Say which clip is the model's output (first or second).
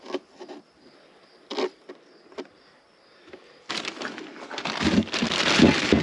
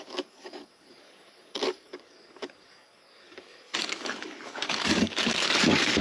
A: second